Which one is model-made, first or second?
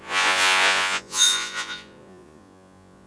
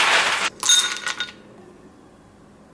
first